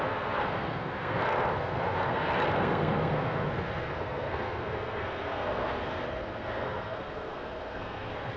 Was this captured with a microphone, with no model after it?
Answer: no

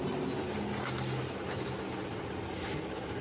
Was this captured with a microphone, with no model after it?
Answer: yes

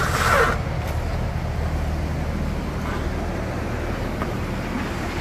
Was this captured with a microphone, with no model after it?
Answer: yes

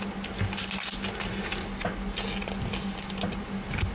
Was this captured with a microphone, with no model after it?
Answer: yes